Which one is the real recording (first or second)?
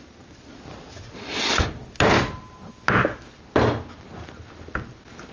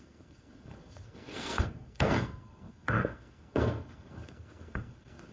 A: first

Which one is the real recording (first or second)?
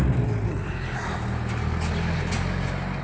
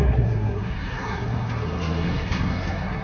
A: first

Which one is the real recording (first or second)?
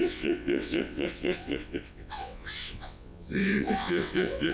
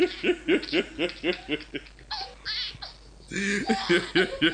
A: second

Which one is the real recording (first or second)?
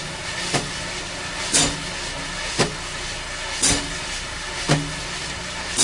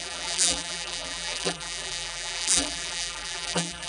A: first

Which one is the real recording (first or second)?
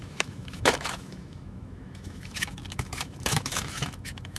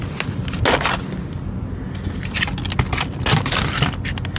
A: second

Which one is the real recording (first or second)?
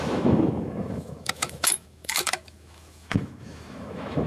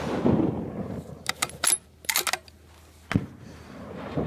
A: second